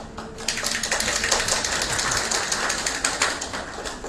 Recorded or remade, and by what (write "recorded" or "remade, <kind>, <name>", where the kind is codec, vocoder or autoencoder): recorded